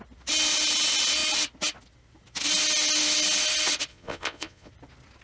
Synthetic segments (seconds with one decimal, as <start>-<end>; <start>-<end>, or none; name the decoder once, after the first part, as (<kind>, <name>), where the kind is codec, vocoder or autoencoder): 3.9-4.7 (vocoder, Vocos)